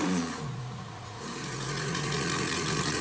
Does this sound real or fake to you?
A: fake